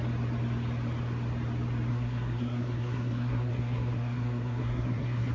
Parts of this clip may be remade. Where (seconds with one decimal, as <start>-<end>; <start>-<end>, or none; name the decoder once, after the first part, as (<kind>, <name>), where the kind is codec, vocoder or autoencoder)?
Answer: 1.9-5.3 (codec, SNAC)